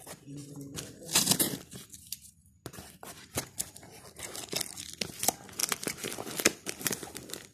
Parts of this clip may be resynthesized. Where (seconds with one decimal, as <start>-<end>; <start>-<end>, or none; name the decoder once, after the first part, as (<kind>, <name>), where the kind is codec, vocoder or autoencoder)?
0.4-1.8 (vocoder, BigVGAN v2); 5.6-6.9